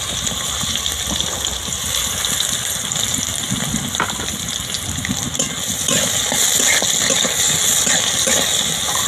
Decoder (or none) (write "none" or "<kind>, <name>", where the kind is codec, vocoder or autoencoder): none